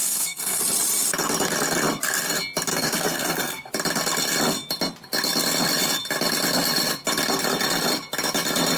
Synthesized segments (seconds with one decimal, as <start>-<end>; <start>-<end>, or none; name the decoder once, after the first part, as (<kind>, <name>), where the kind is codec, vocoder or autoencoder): 0.0-0.6 (codec, SNAC); 2.7-3.7